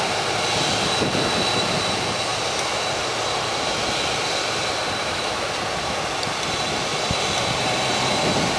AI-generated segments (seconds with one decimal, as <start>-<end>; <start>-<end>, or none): 5.0-5.5